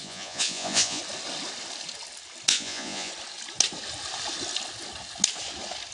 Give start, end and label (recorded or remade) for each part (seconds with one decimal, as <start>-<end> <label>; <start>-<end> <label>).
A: 0.0-1.0 remade; 1.0-2.5 recorded; 2.5-3.1 remade; 3.1-5.9 recorded

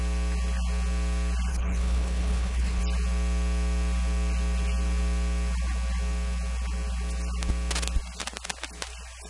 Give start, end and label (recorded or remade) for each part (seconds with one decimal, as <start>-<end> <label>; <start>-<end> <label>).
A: 0.0-1.5 recorded; 1.5-2.8 remade; 2.8-9.3 recorded

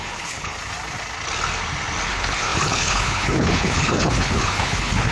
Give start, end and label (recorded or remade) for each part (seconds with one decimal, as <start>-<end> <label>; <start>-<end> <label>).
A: 0.0-0.6 remade; 0.6-2.1 recorded; 2.1-5.1 remade

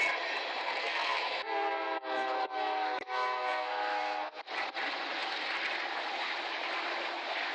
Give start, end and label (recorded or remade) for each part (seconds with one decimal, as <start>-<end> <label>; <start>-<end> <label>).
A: 0.0-0.6 recorded; 0.6-4.4 remade; 4.4-7.5 recorded

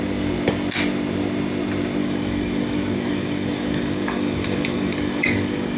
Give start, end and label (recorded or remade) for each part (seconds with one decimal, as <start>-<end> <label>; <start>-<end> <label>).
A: 0.0-2.0 recorded; 2.0-5.8 remade

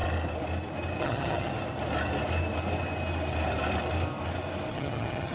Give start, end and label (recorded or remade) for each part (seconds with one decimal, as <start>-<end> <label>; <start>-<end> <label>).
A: 0.0-1.0 recorded; 1.0-1.5 remade; 1.5-4.7 recorded; 4.7-5.3 remade

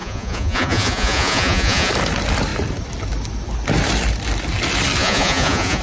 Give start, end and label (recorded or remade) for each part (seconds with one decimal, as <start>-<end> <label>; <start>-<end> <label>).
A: 0.0-1.9 remade; 1.9-5.0 recorded; 5.0-5.8 remade

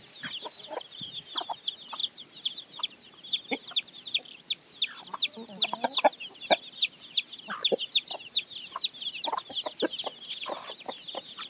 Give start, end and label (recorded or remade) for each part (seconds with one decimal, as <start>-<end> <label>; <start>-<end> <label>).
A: 0.0-2.0 recorded; 2.0-2.8 remade; 2.8-11.5 recorded